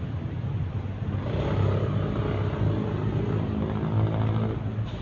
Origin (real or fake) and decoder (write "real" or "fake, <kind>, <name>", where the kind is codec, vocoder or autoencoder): real